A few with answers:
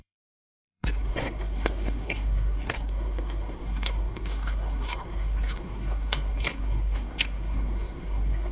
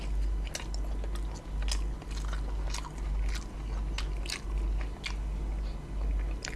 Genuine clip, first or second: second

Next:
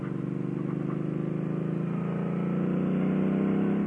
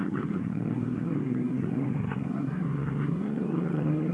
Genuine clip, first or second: first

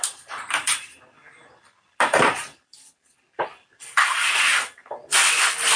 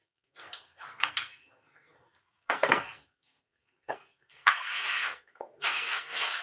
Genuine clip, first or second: first